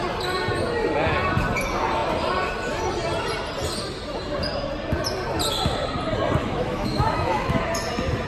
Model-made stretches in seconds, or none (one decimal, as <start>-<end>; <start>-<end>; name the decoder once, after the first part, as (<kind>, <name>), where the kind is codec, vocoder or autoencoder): 6.4-7.5 (autoencoder, DAC-VAE)